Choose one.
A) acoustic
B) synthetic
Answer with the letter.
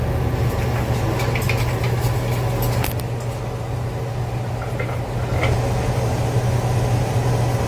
A